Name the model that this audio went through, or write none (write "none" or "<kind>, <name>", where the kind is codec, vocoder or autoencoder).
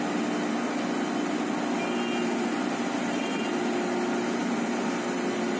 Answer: none